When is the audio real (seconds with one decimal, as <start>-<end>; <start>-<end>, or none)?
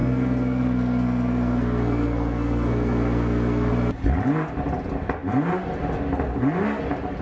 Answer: 3.7-7.2